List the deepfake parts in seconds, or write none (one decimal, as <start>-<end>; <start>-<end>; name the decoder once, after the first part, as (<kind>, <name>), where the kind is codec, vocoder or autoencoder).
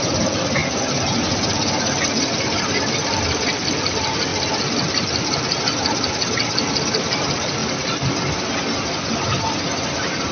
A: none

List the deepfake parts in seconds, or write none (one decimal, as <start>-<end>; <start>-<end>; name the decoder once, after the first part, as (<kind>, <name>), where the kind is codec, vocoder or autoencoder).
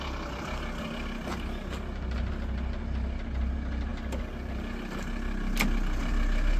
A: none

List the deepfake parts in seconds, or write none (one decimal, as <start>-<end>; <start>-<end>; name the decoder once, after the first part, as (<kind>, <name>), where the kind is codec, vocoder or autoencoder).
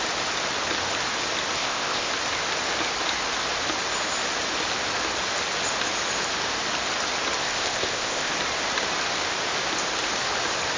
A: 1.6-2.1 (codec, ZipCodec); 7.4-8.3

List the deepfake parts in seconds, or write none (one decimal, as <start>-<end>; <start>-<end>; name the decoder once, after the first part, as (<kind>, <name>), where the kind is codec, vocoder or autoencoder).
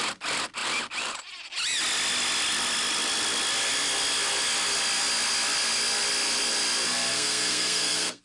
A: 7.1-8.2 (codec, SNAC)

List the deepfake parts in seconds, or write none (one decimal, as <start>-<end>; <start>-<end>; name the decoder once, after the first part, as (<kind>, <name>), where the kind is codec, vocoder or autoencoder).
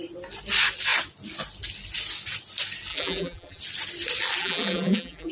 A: 2.9-3.6 (vocoder, BigVGAN v2); 4.4-5.3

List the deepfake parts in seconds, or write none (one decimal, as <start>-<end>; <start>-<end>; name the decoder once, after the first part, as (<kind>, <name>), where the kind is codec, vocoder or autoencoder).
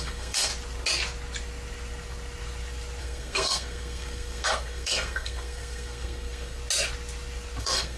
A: 0.0-0.5 (codec, SNAC); 3.0-6.6; 7.6-8.0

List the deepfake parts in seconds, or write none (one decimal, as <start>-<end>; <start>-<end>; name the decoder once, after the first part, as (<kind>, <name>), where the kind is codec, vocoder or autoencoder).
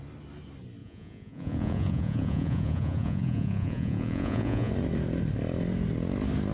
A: 0.8-4.7 (vocoder, Vocos)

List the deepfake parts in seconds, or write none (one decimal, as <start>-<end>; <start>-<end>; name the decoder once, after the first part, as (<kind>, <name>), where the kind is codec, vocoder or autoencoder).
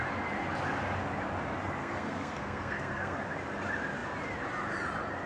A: 1.8-3.2 (codec, SNAC)